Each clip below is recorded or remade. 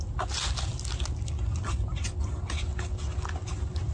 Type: recorded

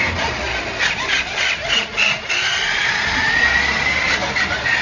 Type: recorded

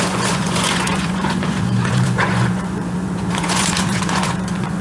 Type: remade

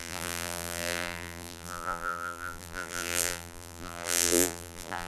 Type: remade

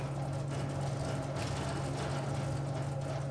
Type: recorded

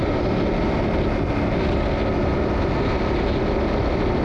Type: recorded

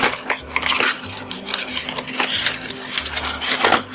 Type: recorded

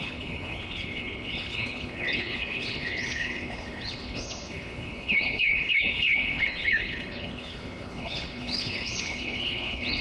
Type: remade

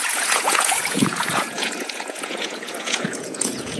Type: remade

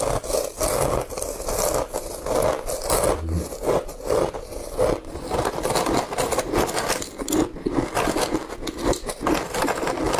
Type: recorded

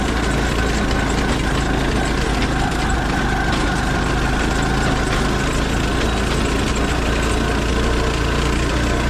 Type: recorded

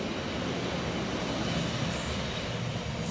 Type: recorded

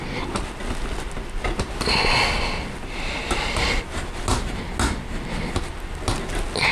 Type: recorded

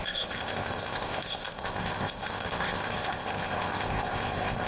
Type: remade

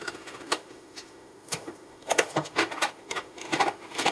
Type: remade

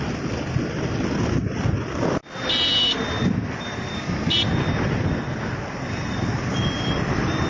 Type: recorded